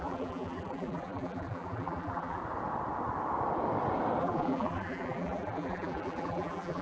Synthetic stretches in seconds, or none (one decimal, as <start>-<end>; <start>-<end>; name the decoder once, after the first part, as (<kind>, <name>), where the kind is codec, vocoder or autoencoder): 0.0-2.4 (vocoder, BigVGAN v2); 4.2-6.8